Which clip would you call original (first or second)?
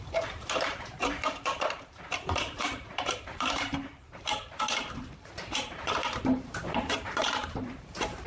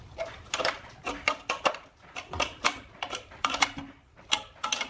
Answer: second